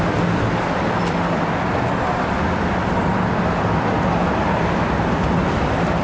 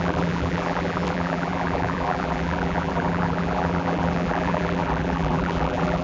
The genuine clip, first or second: first